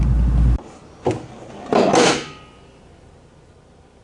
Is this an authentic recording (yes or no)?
yes